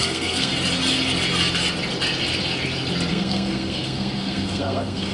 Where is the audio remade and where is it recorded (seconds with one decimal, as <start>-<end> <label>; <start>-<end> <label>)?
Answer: 0.0-0.5 remade; 0.5-3.1 recorded; 3.1-5.1 remade